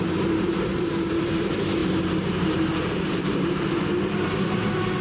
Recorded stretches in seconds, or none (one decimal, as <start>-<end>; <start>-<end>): none